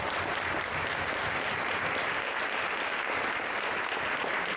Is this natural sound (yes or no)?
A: yes